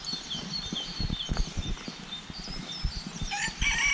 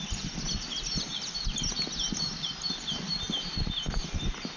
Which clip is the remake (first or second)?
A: first